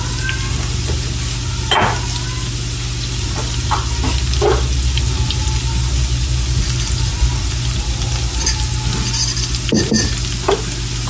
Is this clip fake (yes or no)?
no